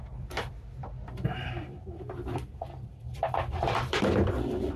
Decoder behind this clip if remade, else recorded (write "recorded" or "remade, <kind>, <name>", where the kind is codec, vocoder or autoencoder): remade, vocoder, BigVGAN v2